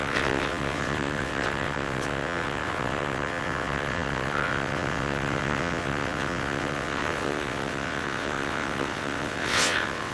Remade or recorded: remade